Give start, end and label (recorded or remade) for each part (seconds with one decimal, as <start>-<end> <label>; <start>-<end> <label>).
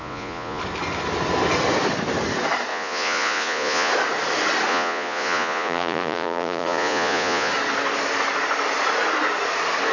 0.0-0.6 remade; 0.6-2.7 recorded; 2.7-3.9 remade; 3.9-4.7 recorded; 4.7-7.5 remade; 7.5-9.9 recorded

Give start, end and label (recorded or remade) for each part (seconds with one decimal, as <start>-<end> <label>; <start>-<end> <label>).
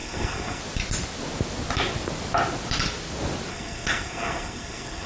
0.0-0.6 remade; 0.6-3.5 recorded; 3.5-5.1 remade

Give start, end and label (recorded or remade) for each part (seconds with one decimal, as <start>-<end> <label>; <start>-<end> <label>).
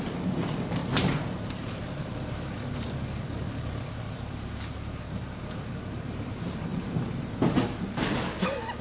0.0-8.8 remade